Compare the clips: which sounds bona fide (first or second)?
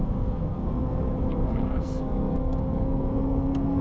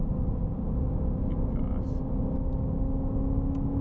second